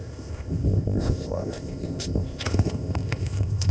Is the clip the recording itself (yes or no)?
no